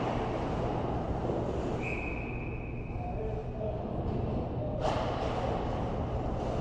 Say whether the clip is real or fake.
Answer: real